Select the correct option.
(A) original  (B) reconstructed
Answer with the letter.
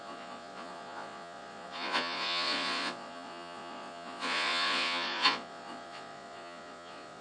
B